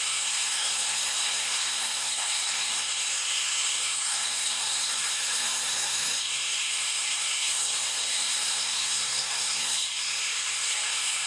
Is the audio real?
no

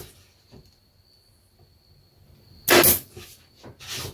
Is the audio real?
yes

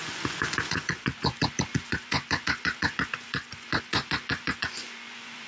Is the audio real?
no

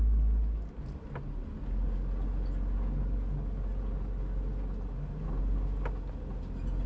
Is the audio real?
yes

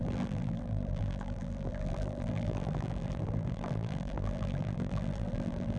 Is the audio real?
no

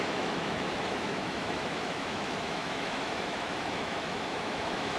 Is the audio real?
no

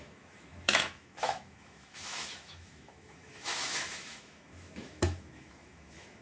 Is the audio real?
no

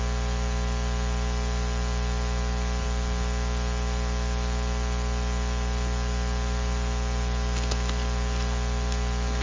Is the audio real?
yes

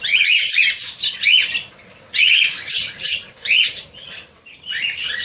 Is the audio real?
yes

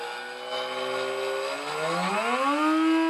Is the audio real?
yes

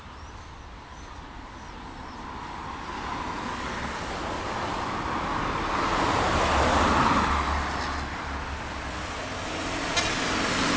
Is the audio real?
yes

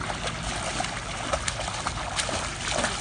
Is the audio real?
yes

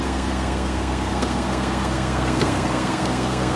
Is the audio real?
no